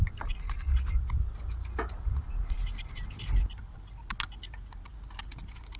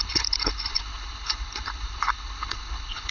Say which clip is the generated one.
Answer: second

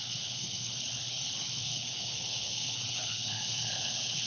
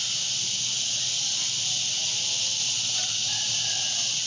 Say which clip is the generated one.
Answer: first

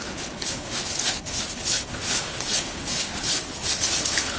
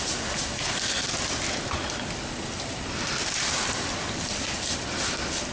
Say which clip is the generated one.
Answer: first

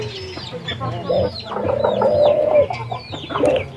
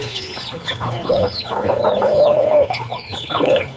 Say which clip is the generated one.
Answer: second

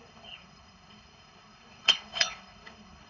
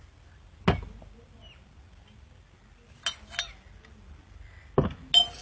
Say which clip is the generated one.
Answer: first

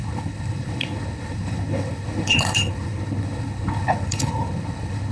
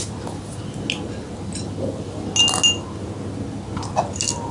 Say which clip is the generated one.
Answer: first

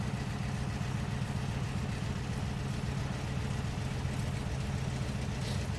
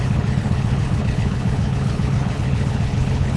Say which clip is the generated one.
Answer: second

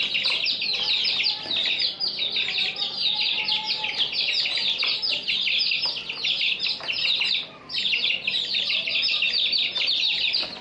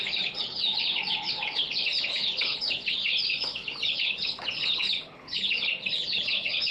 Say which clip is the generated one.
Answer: second